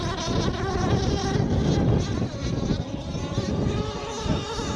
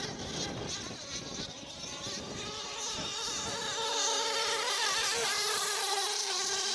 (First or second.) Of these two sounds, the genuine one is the first